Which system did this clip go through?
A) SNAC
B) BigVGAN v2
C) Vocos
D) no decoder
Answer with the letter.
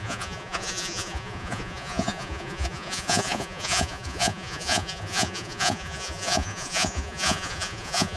C